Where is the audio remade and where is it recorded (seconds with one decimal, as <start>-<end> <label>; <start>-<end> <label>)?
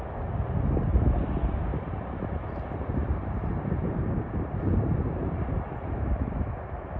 0.0-1.7 recorded; 1.7-5.7 remade; 5.7-7.0 recorded